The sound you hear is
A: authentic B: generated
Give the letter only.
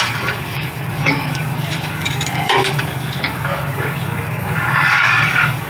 B